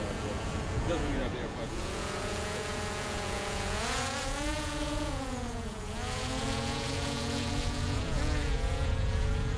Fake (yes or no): yes